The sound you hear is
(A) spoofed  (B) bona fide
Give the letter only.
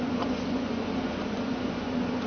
A